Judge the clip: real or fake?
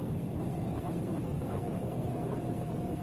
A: fake